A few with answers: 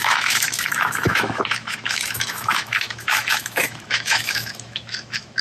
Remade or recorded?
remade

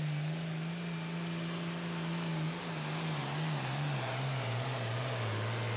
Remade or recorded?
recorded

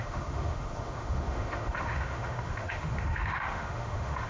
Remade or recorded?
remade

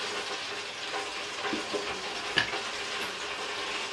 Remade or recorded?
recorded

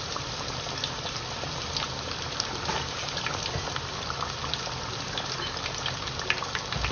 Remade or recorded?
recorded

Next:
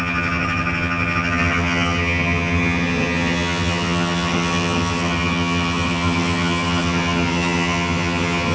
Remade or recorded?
remade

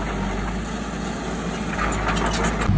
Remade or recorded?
recorded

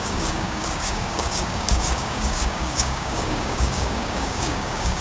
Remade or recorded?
remade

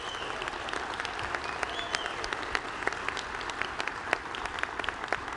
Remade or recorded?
recorded